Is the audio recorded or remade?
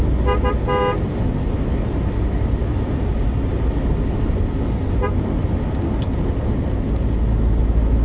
recorded